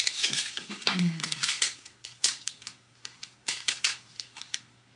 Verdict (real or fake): fake